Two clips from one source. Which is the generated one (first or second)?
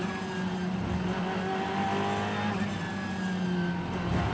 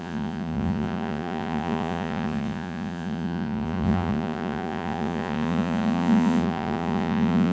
second